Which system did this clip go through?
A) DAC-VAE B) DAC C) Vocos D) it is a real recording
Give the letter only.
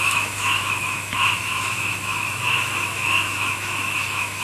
A